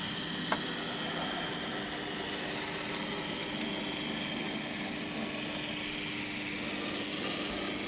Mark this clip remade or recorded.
recorded